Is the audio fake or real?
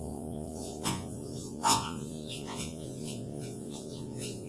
fake